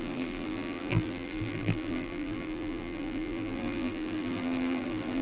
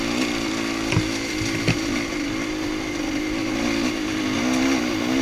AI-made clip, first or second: first